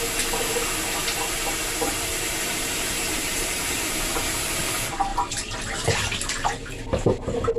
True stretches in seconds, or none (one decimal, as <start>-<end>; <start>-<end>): 0.0-2.1; 4.6-5.1; 5.9-7.6